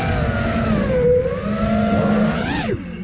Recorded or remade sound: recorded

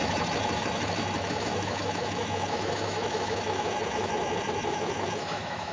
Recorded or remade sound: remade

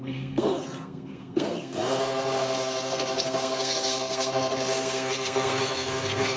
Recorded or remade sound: remade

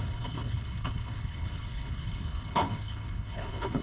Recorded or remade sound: remade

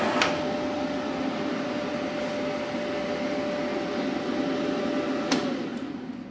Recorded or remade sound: recorded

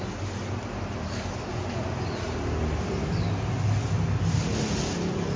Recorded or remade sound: recorded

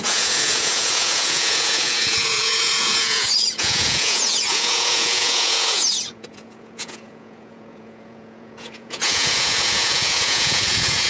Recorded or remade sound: remade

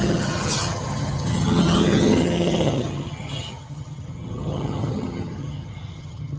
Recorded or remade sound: remade